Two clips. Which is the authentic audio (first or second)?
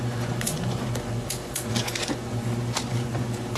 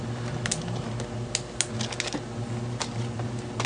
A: second